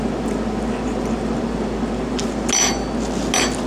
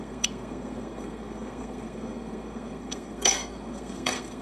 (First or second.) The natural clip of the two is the first